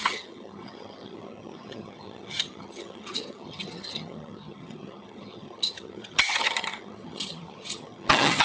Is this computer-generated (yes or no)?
yes